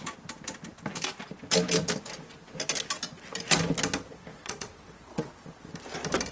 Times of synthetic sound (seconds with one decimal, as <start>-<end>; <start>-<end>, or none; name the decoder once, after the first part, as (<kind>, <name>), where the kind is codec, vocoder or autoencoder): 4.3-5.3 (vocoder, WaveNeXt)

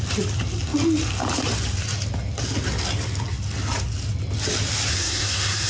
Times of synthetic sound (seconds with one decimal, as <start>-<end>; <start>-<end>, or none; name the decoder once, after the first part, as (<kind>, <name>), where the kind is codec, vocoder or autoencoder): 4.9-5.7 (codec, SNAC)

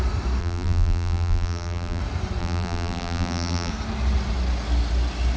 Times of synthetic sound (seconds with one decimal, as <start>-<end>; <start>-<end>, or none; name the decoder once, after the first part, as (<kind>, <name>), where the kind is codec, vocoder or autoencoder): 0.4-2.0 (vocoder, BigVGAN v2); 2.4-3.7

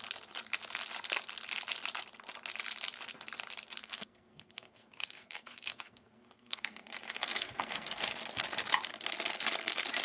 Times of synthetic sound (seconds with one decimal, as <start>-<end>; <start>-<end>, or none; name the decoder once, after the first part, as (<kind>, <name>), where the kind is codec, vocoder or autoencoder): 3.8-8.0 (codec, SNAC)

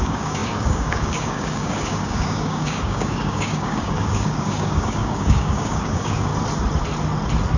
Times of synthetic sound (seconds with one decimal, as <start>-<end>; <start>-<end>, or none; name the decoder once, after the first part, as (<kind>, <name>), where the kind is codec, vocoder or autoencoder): 0.0-6.3 (codec, DAC)

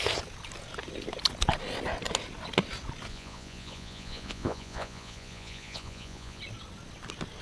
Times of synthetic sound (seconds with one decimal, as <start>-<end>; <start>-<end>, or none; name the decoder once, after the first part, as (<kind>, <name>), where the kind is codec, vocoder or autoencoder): 3.1-6.4 (vocoder, Vocos)

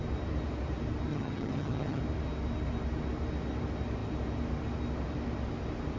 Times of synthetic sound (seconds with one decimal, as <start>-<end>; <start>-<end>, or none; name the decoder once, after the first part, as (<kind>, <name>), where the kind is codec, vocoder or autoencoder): 1.1-2.0 (vocoder, HiFi-GAN)